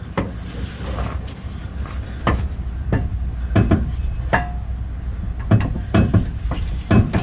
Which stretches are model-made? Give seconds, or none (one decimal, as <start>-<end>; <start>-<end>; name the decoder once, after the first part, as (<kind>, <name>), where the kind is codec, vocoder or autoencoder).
5.1-6.1 (vocoder, BigVGAN v2)